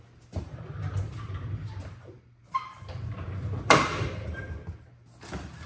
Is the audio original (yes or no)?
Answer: no